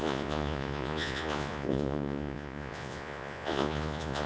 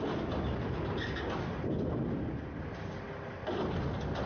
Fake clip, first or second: first